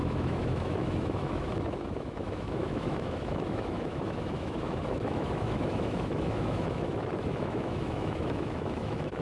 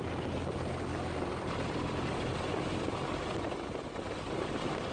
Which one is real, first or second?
second